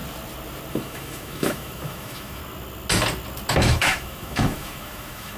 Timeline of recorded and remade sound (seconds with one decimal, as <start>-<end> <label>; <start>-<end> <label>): 0.0-0.7 recorded; 0.7-2.4 remade; 2.4-3.5 recorded; 3.5-5.4 remade